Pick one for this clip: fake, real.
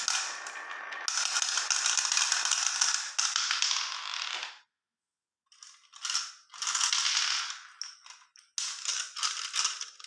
real